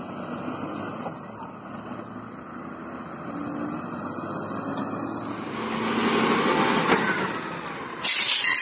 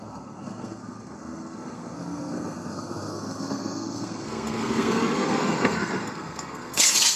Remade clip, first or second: second